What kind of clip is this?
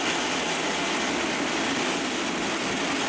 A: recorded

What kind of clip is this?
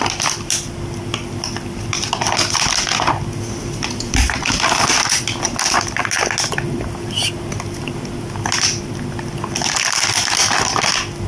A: recorded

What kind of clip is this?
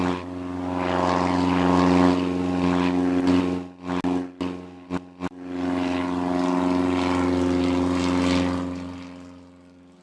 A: recorded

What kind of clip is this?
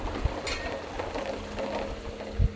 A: recorded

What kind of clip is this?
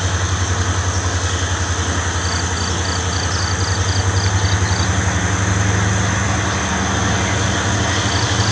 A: recorded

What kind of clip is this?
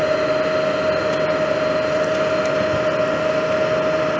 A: recorded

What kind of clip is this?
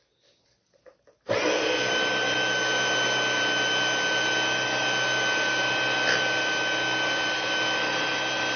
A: recorded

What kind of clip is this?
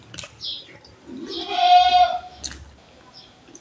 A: recorded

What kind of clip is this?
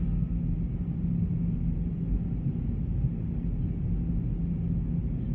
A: recorded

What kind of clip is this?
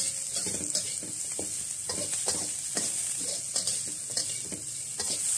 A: recorded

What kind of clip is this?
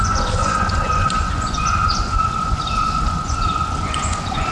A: remade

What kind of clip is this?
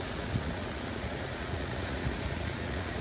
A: remade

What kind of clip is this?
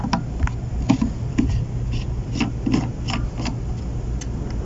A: recorded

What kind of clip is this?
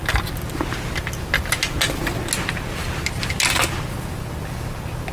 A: recorded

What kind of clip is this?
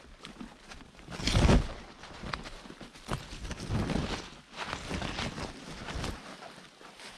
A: recorded